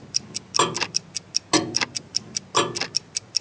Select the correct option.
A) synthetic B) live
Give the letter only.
B